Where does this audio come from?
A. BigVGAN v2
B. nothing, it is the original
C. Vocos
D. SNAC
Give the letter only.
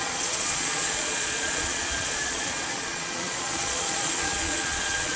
C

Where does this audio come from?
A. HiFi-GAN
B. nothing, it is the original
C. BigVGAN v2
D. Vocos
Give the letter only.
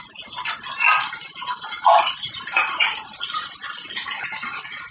B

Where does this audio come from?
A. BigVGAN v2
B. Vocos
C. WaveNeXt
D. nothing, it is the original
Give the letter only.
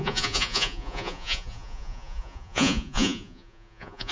B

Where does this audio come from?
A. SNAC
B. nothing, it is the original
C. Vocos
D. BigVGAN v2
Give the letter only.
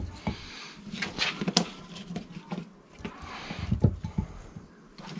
B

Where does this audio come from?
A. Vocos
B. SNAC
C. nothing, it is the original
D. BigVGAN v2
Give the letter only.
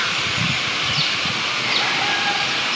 C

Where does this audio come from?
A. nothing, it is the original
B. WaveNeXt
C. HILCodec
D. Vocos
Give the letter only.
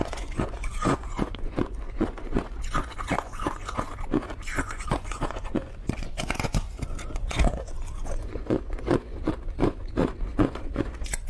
D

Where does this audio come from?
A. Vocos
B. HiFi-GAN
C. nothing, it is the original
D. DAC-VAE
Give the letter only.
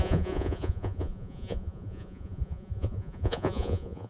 A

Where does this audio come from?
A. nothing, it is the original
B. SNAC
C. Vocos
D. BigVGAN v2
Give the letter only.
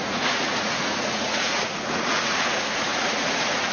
C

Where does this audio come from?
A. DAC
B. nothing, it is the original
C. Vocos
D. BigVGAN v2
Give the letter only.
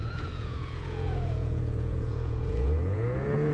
C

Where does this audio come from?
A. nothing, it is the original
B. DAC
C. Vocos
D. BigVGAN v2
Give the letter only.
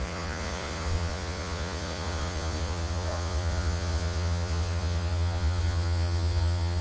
C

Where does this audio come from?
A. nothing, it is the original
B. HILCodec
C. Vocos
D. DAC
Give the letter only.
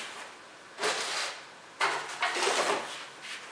A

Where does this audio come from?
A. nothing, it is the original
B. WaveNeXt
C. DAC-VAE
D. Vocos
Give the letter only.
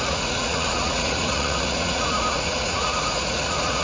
D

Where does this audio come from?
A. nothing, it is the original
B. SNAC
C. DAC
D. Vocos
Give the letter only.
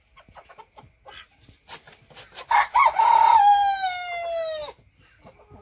A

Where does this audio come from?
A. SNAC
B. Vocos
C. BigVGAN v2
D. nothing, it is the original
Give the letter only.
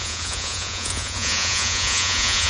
B